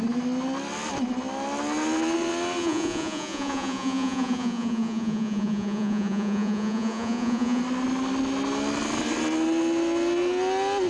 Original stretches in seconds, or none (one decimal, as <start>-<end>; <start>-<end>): 0.0-2.6; 7.6-10.9